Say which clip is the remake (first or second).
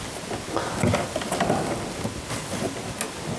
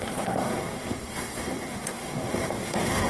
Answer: second